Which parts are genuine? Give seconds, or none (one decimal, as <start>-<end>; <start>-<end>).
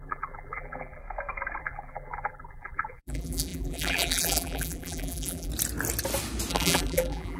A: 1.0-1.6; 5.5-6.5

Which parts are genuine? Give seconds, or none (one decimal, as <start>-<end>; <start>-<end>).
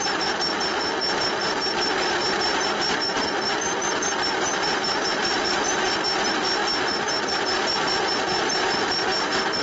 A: 0.0-4.5; 5.9-9.6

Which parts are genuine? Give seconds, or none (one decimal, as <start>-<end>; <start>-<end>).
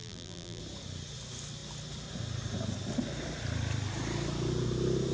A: 0.6-5.1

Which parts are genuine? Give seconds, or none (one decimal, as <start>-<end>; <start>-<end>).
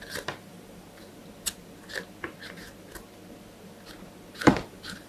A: 1.2-4.3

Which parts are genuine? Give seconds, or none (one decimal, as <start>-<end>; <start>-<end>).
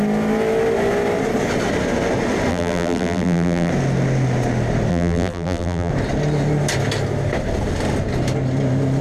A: 0.0-2.5; 3.7-4.9; 5.9-9.0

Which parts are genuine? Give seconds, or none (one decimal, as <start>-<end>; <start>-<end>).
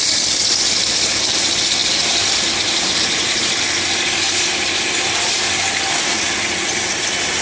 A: 0.0-1.8; 3.5-7.4